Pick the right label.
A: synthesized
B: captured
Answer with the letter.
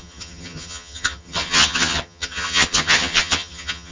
A